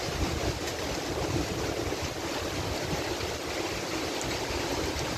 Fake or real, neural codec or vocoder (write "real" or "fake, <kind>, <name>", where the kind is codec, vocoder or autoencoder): real